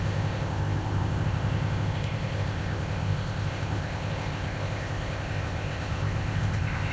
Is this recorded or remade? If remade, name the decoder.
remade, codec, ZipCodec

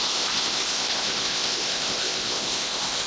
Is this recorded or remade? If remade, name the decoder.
remade, codec, ZipCodec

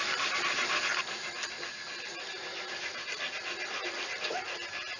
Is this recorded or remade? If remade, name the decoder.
recorded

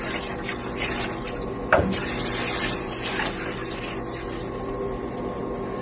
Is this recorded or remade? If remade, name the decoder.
recorded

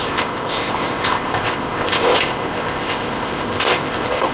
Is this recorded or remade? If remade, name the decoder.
remade, codec, ZipCodec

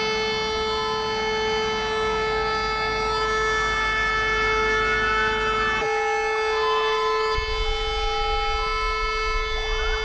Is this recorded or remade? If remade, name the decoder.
recorded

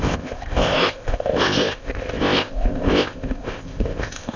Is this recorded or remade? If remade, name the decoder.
remade, codec, ZipCodec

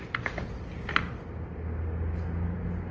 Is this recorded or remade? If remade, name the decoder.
recorded